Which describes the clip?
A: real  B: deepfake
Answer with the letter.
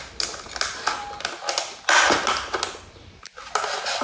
A